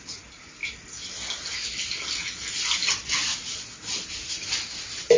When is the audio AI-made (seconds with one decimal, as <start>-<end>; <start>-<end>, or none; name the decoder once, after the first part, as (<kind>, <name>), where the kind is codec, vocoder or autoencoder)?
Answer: none